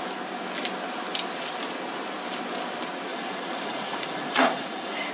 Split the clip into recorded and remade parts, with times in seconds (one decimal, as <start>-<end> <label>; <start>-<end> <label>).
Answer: 0.0-3.1 recorded; 3.1-5.1 remade